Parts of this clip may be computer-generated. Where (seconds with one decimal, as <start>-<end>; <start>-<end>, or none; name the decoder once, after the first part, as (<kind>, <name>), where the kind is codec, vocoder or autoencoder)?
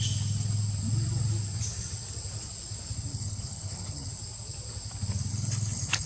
3.1-4.1 (codec, HILCodec); 5.3-6.1